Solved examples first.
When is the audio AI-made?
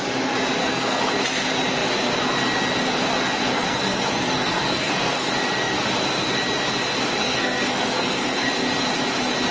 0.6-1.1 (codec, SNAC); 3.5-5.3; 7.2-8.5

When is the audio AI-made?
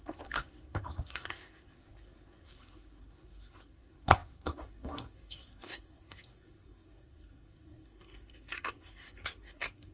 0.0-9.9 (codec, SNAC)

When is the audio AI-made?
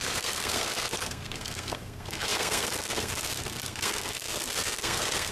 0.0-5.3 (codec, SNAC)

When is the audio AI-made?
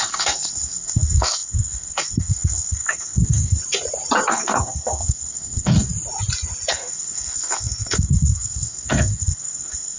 0.0-3.6 (codec, SNAC); 4.3-5.9; 6.7-10.0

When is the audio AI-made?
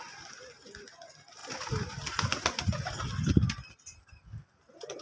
none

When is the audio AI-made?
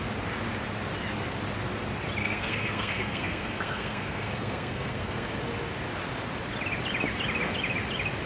2.2-5.4 (codec, SNAC)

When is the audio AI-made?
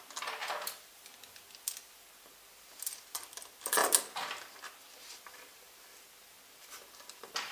none